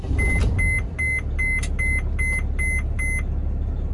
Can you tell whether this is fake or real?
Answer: real